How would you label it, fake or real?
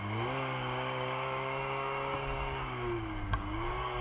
fake